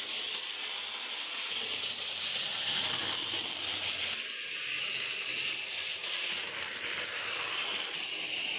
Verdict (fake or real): real